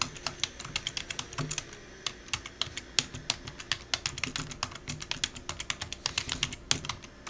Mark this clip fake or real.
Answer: real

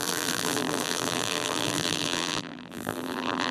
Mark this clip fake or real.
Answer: fake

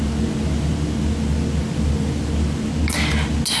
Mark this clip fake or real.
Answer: real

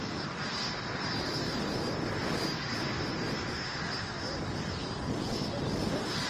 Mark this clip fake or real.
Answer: real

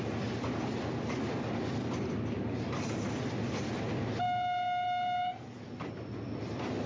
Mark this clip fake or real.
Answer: real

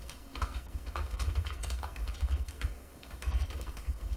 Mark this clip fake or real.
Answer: fake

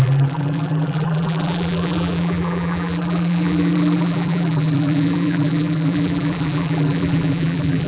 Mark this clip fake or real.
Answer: fake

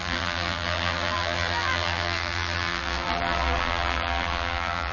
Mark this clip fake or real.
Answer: fake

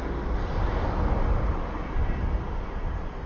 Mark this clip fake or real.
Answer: real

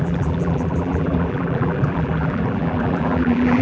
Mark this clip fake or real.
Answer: fake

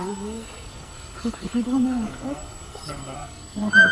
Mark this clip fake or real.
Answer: fake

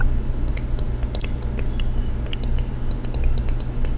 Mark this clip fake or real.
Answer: real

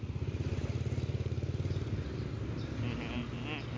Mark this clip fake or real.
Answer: real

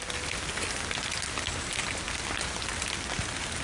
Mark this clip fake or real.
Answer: real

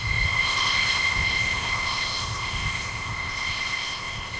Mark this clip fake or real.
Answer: fake